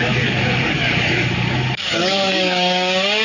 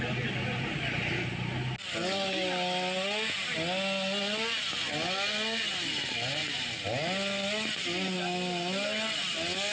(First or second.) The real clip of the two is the second